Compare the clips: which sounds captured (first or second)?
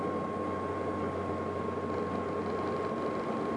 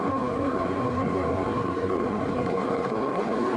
first